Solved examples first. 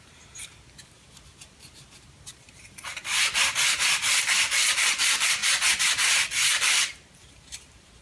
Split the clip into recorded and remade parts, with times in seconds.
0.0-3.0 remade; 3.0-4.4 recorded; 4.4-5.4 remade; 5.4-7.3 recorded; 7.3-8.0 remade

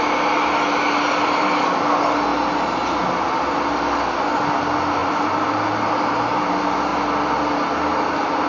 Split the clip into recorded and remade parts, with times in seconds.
0.0-2.3 recorded; 2.3-3.0 remade; 3.0-5.0 recorded; 5.0-6.5 remade; 6.5-8.5 recorded

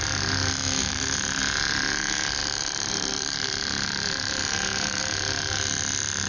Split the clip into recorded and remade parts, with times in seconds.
0.0-0.8 recorded; 0.8-1.4 remade; 1.4-2.4 recorded; 2.4-5.0 remade; 5.0-6.3 recorded

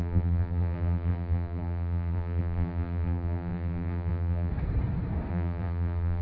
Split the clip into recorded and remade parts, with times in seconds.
0.0-4.5 remade; 4.5-5.3 recorded; 5.3-6.2 remade

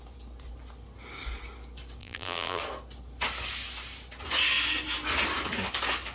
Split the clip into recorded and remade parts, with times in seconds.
0.0-2.0 recorded; 2.0-2.6 remade; 2.6-6.1 recorded

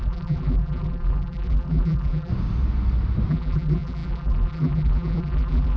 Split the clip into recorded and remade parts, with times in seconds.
0.0-2.3 remade; 2.3-3.3 recorded; 3.3-5.8 remade